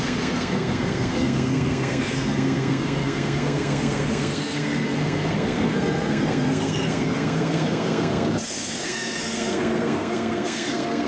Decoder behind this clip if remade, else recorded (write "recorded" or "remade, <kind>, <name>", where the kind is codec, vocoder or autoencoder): remade, codec, SNAC